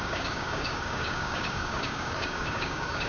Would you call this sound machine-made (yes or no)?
yes